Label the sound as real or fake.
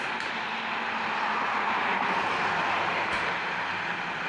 real